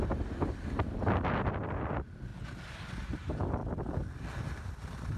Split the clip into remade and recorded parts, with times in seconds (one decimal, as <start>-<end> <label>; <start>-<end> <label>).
0.0-5.2 recorded